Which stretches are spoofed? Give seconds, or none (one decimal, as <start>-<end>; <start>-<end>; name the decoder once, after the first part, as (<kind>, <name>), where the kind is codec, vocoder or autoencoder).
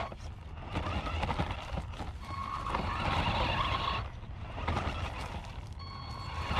none